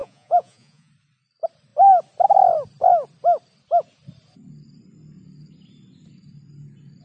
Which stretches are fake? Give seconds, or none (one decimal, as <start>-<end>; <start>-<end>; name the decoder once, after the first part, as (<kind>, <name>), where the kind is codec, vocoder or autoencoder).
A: 0.0-0.9 (vocoder, Vocos)